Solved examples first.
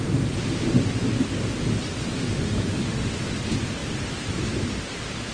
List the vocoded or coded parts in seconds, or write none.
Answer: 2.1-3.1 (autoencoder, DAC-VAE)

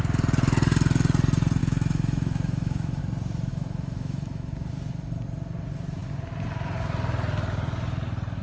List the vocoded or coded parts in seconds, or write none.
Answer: 1.6-3.0 (autoencoder, DAC-VAE); 3.5-4.7